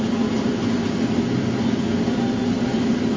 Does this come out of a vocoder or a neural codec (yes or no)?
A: no